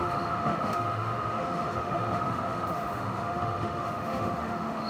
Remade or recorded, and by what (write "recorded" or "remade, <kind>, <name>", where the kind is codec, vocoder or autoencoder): remade, autoencoder, DAC-VAE